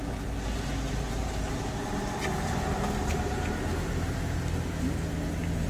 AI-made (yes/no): no